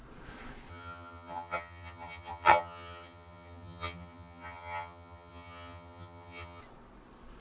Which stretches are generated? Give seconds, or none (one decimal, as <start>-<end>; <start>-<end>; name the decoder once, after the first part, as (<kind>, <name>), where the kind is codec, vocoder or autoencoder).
0.7-6.6 (vocoder, HiFi-GAN)